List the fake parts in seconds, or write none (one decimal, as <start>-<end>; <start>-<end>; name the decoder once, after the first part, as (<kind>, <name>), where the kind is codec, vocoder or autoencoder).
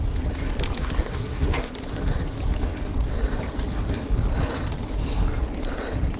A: 0.7-1.7 (codec, SNAC)